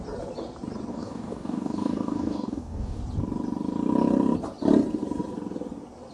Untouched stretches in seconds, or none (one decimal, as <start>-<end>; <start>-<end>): 0.0-0.9; 3.0-6.1